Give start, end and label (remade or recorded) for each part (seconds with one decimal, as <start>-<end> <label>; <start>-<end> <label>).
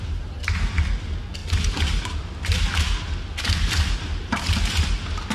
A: 0.0-5.3 recorded